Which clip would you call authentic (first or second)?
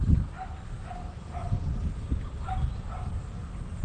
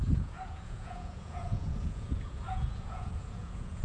first